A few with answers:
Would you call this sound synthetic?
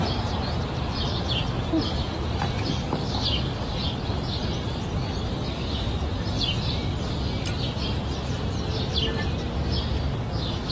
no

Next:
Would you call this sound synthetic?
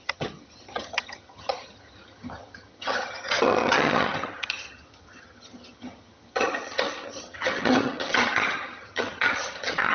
yes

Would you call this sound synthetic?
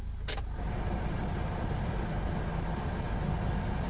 no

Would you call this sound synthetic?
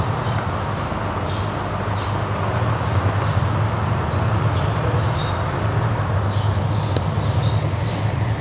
no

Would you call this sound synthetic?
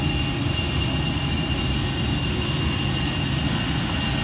no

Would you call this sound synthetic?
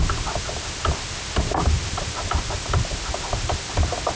no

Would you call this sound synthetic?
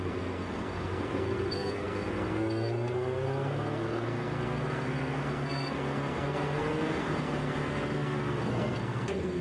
yes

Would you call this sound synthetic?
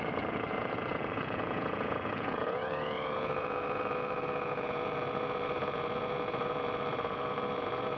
yes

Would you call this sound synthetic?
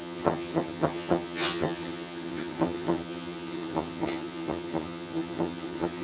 yes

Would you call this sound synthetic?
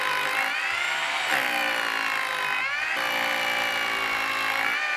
no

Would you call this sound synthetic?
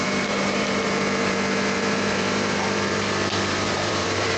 yes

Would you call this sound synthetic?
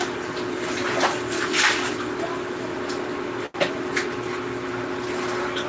no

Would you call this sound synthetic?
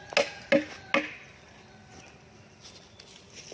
no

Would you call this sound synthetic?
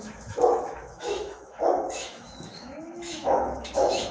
yes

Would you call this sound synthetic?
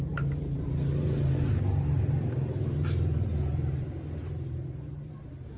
yes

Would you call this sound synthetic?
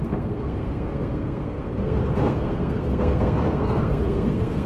yes